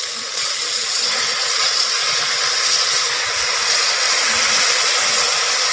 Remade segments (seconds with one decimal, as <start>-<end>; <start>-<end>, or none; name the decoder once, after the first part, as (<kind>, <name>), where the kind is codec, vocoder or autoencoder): none